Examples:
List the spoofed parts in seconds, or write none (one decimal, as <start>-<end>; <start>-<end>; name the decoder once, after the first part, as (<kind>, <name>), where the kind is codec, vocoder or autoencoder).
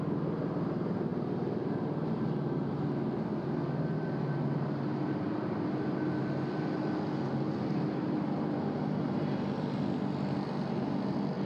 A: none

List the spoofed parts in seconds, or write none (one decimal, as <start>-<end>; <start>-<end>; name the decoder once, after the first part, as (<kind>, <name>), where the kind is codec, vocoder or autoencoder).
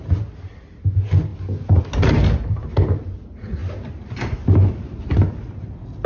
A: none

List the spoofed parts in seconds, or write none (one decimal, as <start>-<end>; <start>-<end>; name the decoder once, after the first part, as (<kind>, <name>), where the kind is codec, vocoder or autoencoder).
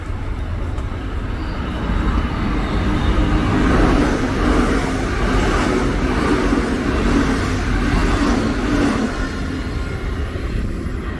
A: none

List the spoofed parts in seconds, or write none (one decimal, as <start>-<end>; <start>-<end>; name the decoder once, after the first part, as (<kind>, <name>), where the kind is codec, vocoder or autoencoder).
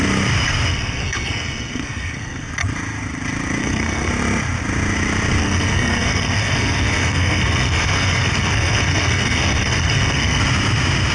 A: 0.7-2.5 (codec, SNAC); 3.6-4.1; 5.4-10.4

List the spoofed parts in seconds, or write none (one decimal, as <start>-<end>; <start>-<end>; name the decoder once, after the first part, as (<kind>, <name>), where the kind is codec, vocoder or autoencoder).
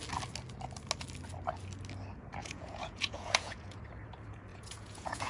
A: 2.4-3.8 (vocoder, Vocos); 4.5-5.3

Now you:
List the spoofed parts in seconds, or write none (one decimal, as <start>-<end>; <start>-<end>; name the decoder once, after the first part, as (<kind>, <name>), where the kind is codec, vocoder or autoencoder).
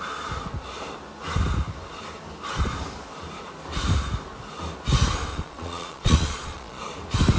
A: 5.3-6.8 (vocoder, Vocos)